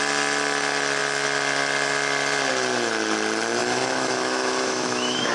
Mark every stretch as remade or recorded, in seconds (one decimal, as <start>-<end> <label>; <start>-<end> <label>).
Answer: 0.0-3.6 recorded; 3.6-5.3 remade